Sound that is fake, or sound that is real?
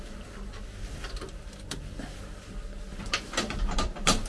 real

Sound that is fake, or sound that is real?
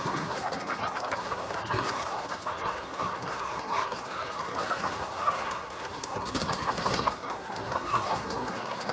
fake